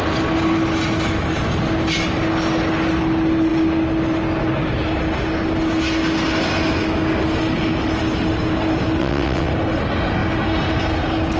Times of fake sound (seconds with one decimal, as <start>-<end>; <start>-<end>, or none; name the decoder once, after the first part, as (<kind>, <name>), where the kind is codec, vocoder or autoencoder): 9.0-9.5 (vocoder, WaveNeXt)